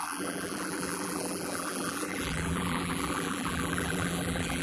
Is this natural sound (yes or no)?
no